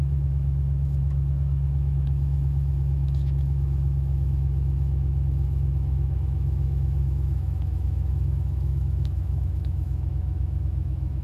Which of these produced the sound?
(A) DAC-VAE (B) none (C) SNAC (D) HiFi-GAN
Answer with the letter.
A